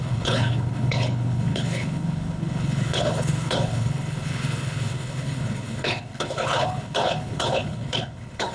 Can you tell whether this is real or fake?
fake